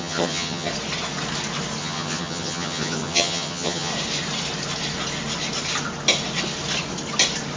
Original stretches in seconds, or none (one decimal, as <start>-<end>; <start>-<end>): 0.7-1.8; 3.9-7.6